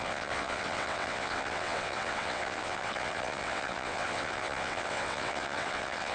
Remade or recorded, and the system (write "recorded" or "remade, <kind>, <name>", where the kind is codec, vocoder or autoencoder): remade, vocoder, WaveNeXt